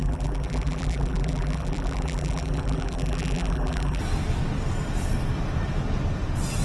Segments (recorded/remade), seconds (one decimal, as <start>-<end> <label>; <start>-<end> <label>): 0.0-4.0 remade; 4.0-6.6 recorded